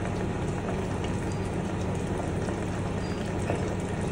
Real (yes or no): yes